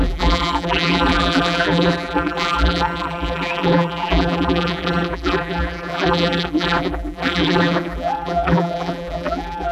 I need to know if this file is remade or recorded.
remade